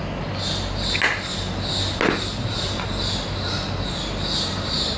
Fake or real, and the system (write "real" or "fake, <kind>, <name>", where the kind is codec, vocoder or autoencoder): real